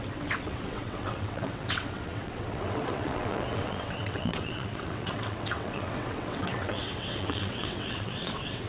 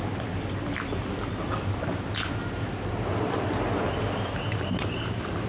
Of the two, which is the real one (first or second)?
second